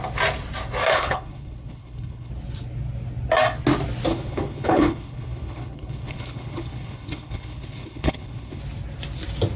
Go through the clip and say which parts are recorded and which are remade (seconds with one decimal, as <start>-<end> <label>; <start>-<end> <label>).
0.0-0.9 recorded; 0.9-2.3 remade; 2.3-4.1 recorded; 4.1-8.6 remade; 8.6-9.6 recorded

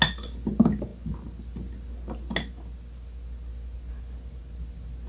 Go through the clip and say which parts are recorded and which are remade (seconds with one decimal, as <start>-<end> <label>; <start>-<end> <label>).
0.0-5.1 recorded

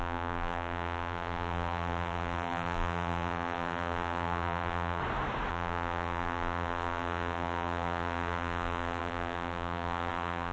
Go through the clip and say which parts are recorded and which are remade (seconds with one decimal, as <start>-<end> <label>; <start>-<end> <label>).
0.0-5.0 remade; 5.0-5.5 recorded; 5.5-10.5 remade

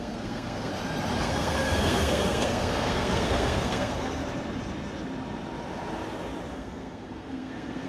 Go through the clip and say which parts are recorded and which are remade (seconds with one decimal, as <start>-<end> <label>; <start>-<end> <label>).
0.0-0.7 remade; 0.7-1.2 recorded; 1.2-4.2 remade; 4.2-6.5 recorded; 6.5-7.9 remade